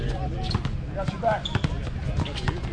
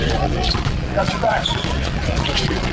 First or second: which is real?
first